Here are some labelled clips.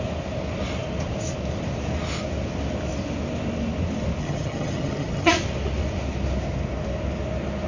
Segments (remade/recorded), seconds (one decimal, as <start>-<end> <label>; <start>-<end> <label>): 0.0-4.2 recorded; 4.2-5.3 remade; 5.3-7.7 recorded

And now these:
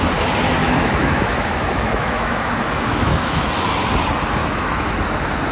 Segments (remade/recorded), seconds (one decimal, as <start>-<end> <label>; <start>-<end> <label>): 0.0-0.6 recorded; 0.6-3.5 remade; 3.5-4.4 recorded; 4.4-4.9 remade; 4.9-5.5 recorded

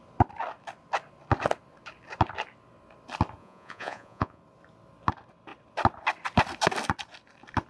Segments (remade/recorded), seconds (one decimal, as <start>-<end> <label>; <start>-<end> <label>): 0.0-3.4 recorded; 3.4-4.4 remade; 4.4-7.7 recorded

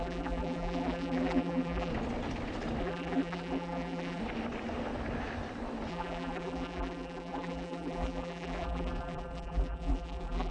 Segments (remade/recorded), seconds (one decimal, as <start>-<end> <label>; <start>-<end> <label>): 0.0-1.9 remade; 1.9-2.8 recorded; 2.8-4.2 remade; 4.2-5.9 recorded; 5.9-10.5 remade

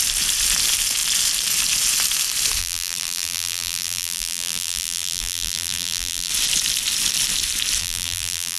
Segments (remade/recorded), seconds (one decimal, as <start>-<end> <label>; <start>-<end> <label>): 0.0-2.6 recorded; 2.6-6.3 remade; 6.3-7.8 recorded; 7.8-8.6 remade